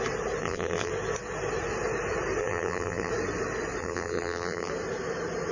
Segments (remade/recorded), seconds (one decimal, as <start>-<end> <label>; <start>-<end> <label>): 0.0-0.4 recorded; 0.4-0.9 remade; 0.9-2.4 recorded; 2.4-3.1 remade; 3.1-3.8 recorded; 3.8-4.7 remade; 4.7-5.5 recorded